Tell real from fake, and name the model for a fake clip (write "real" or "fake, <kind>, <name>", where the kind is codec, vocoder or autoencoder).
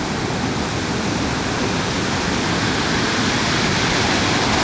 real